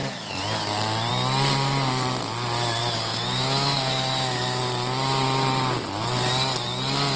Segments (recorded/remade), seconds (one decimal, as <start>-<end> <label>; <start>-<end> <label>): 0.0-2.8 recorded; 2.8-4.6 remade; 4.6-7.2 recorded